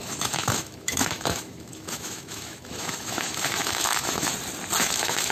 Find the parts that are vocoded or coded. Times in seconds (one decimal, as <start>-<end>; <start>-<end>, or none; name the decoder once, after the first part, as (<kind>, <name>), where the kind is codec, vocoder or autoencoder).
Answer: 0.0-4.3 (autoencoder, DAC-VAE); 4.8-5.3